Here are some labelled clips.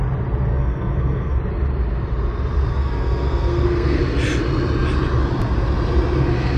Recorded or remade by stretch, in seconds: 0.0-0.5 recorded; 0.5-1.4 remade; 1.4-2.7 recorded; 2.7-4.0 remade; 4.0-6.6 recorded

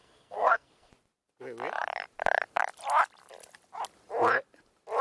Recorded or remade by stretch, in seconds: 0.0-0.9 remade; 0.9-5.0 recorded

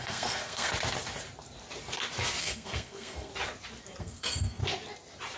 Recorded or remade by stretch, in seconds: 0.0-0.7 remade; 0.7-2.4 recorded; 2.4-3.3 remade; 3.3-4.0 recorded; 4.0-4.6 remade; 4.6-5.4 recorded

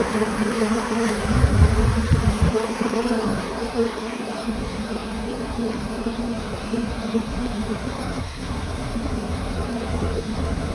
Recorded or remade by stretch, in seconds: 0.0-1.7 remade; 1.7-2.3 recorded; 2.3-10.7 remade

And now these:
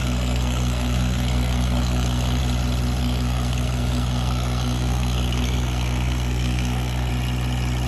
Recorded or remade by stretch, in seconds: 0.0-2.4 remade; 2.4-3.0 recorded; 3.0-7.1 remade; 7.1-7.9 recorded